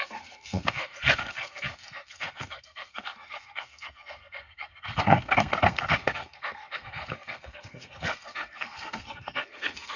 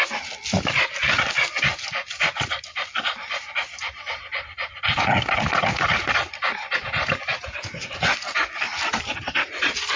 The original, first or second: second